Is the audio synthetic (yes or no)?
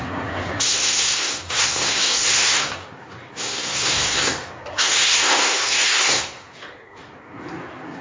yes